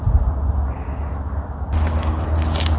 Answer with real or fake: real